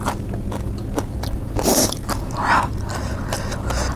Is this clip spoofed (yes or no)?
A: no